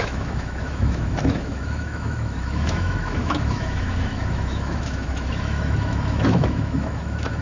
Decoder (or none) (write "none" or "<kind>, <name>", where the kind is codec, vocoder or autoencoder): autoencoder, DAC-VAE